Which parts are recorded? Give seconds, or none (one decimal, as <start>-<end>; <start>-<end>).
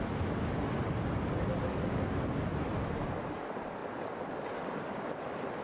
0.0-1.7; 2.3-5.6